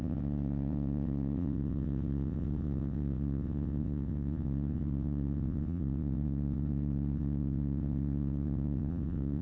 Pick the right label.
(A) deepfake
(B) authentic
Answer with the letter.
A